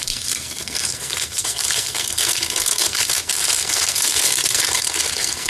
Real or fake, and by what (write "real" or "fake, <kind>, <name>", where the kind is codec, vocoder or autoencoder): fake, codec, SNAC